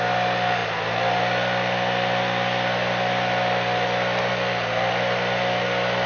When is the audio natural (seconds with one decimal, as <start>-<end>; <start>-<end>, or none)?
0.0-6.1